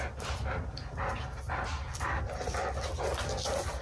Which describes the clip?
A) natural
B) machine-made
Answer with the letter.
A